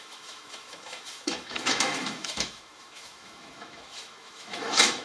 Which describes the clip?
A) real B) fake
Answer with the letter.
B